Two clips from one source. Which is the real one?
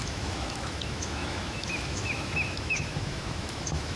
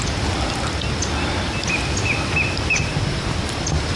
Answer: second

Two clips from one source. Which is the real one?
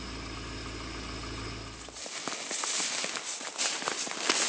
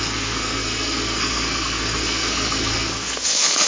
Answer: first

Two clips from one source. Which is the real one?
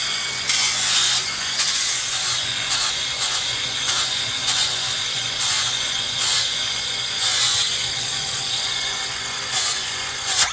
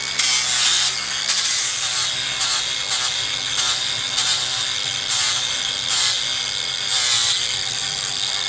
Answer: second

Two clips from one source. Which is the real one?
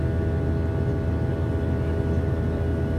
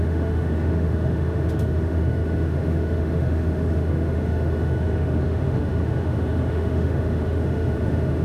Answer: first